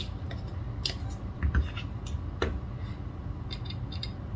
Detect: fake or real real